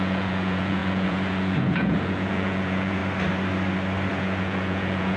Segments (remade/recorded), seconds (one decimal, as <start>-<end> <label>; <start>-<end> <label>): 0.0-3.0 remade; 3.0-4.1 recorded; 4.1-5.2 remade

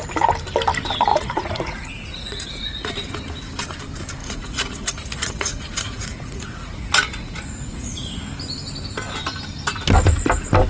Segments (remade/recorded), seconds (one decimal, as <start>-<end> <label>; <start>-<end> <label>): 0.0-1.1 recorded; 1.1-2.9 remade; 2.9-4.2 recorded; 4.2-8.2 remade; 8.2-10.7 recorded

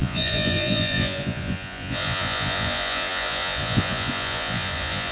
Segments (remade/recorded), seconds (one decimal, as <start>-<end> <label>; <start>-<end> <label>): 0.0-5.1 remade

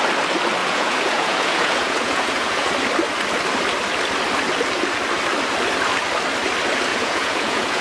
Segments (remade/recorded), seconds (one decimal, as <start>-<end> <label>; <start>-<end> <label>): 0.0-0.6 recorded; 0.6-2.7 remade; 2.7-6.9 recorded; 6.9-7.8 remade

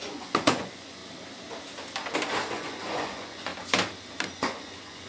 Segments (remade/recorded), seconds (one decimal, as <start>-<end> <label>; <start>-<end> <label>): 0.0-1.0 remade; 1.0-2.5 recorded; 2.5-3.5 remade; 3.5-4.3 recorded; 4.3-5.1 remade